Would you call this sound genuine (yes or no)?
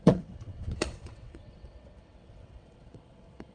no